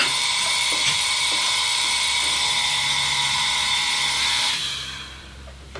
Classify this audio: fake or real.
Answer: fake